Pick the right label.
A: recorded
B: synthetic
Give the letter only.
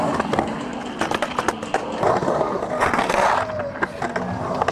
A